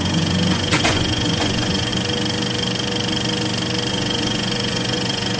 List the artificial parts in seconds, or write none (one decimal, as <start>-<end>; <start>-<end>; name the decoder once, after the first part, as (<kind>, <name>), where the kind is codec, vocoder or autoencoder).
0.0-1.9 (vocoder, Vocos); 3.9-5.4